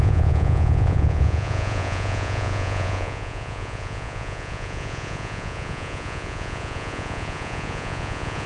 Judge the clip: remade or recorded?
remade